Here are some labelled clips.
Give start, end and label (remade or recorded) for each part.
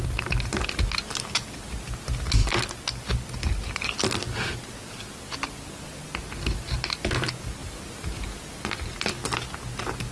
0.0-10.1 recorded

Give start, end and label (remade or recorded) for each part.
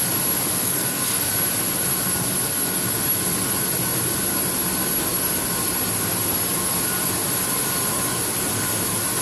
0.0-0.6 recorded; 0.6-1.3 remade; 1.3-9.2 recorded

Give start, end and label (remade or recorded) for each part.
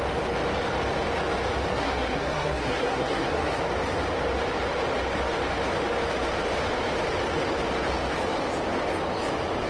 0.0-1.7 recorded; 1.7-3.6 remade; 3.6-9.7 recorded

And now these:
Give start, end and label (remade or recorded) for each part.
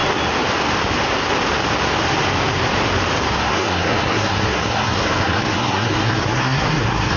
0.0-3.3 recorded; 3.3-7.2 remade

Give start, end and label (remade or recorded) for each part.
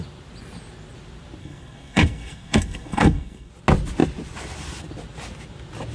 0.0-1.4 recorded; 1.4-3.5 remade; 3.5-5.9 recorded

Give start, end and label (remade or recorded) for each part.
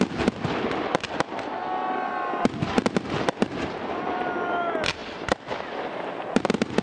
0.0-6.8 recorded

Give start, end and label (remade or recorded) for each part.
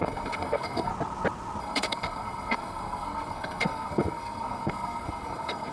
0.0-0.9 remade; 0.9-1.6 recorded; 1.6-5.7 remade